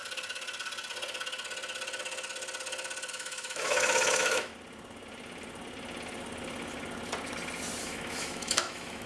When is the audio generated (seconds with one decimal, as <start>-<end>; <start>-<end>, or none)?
3.1-4.5; 7.8-9.1